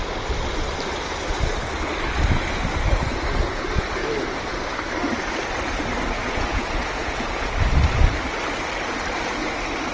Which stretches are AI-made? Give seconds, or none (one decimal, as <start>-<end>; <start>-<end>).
3.3-3.9; 6.2-7.7